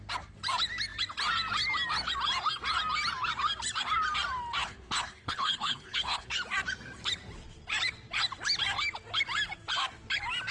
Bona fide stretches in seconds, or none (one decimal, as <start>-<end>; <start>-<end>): 0.0-4.6; 6.3-10.5